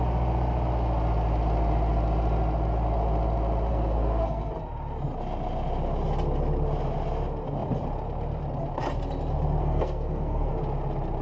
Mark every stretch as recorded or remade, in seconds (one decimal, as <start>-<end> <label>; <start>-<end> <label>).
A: 0.0-3.7 recorded; 3.7-4.5 remade; 4.5-9.6 recorded; 9.6-10.5 remade; 10.5-11.2 recorded